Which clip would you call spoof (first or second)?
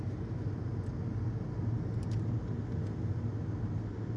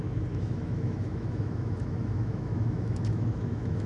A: second